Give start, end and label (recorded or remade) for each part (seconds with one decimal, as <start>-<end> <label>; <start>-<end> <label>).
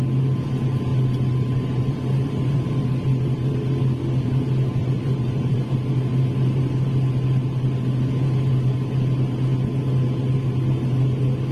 0.0-0.9 recorded; 0.9-3.8 remade; 3.8-4.8 recorded; 4.8-5.7 remade; 5.7-11.5 recorded